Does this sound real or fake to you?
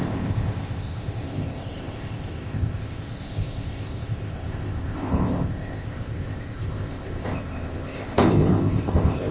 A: fake